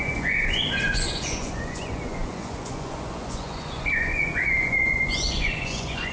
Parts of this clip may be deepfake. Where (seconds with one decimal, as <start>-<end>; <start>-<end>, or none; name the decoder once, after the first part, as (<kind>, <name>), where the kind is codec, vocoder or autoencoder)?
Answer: 0.0-6.1 (vocoder, Vocos)